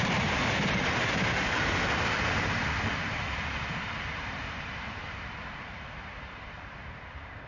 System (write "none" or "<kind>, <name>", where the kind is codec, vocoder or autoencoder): vocoder, BigVGAN v2